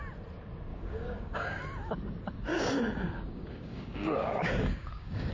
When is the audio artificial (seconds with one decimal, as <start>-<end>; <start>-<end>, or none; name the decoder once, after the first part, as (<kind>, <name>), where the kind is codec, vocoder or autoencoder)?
0.7-1.6 (codec, DAC); 2.5-5.3